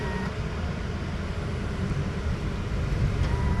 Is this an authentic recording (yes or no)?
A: yes